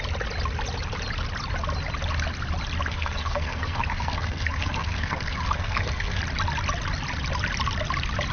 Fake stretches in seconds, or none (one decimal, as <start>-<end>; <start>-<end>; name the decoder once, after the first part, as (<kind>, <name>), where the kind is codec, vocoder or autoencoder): 2.9-6.2 (codec, SNAC)